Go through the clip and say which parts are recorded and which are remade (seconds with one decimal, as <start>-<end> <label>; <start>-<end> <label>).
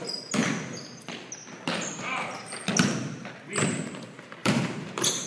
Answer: 0.0-4.4 recorded; 4.4-5.3 remade